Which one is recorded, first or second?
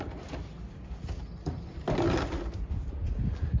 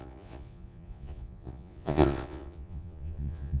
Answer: first